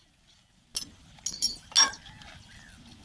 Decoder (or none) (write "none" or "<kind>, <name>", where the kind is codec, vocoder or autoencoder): none